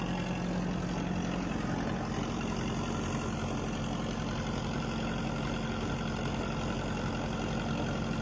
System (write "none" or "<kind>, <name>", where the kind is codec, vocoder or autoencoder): none